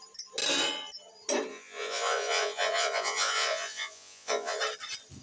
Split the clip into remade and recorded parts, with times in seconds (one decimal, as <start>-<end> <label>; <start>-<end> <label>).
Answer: 0.0-1.5 recorded; 1.5-4.6 remade; 4.6-5.2 recorded